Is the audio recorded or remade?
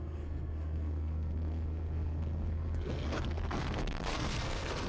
remade